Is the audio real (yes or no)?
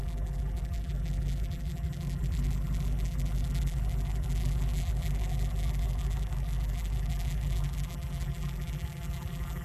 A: no